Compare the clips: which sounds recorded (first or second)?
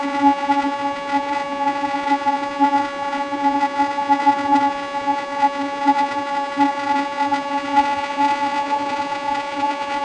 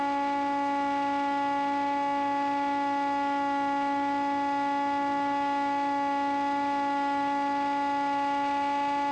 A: second